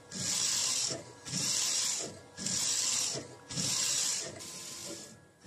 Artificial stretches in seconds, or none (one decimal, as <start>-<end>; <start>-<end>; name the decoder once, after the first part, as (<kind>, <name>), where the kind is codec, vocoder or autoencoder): 0.6-3.9 (vocoder, BigVGAN v2); 4.8-5.5